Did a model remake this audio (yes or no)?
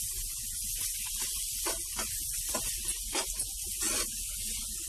no